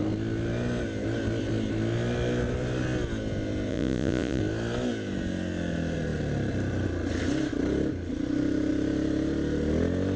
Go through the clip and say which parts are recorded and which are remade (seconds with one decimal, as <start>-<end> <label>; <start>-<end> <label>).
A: 0.0-3.7 recorded; 3.7-4.4 remade; 4.4-10.2 recorded